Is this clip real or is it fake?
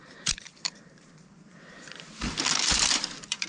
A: fake